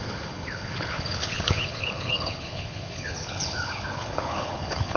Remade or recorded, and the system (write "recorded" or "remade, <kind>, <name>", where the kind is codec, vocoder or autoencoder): remade, codec, HILCodec